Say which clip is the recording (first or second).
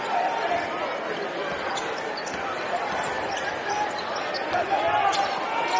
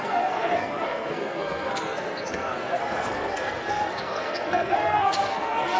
first